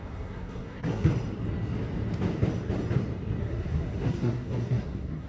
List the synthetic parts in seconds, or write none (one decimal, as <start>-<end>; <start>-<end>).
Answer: 0.0-1.1; 3.4-5.3